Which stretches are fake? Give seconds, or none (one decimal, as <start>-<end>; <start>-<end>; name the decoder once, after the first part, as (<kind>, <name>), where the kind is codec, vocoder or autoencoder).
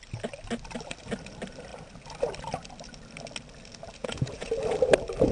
4.0-4.5 (vocoder, Vocos)